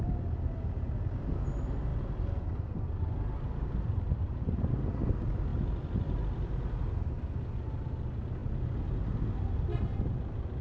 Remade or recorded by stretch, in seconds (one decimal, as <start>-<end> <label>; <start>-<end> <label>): 0.0-10.6 recorded